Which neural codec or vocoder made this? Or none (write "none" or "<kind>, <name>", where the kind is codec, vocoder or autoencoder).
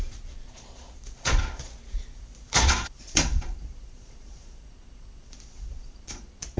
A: vocoder, Vocos